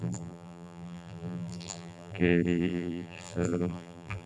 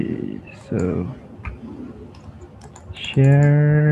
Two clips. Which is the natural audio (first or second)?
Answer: second